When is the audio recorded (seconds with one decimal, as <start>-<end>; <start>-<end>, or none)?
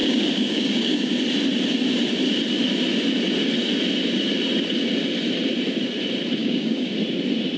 1.1-6.4; 6.9-7.6